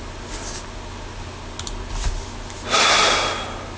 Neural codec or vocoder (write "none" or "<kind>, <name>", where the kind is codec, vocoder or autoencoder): none